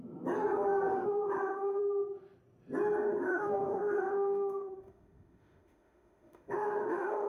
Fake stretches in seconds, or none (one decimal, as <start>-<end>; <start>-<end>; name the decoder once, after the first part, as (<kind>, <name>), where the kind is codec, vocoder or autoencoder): 0.9-1.8 (autoencoder, DAC-VAE); 3.1-7.3